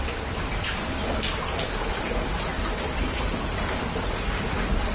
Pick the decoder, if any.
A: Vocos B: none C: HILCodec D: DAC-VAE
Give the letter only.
B